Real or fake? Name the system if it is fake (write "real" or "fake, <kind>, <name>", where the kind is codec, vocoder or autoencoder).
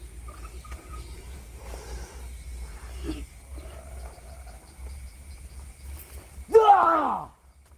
fake, vocoder, BigVGAN v2